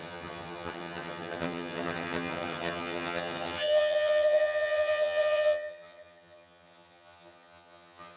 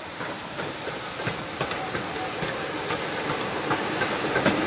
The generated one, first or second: first